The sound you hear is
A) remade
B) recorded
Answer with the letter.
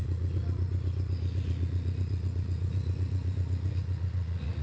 A